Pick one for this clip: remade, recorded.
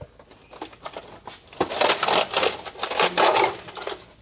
recorded